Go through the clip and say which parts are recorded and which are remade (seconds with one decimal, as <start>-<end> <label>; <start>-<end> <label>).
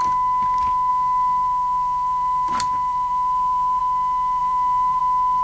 0.0-0.9 recorded; 0.9-3.8 remade; 3.8-4.4 recorded; 4.4-5.0 remade; 5.0-5.4 recorded